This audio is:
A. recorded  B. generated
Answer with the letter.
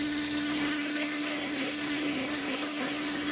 B